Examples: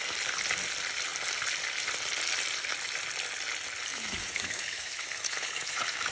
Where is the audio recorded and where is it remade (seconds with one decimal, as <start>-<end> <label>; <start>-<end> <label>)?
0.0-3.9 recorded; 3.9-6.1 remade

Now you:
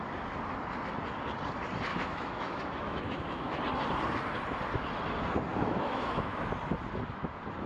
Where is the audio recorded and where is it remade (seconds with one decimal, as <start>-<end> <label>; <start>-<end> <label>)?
0.0-1.9 recorded; 1.9-3.6 remade; 3.6-5.5 recorded; 5.5-6.4 remade; 6.4-7.7 recorded

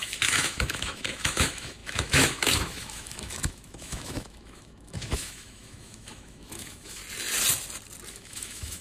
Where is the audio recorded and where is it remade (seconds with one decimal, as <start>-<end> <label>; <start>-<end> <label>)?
0.0-7.0 remade; 7.0-8.1 recorded; 8.1-8.8 remade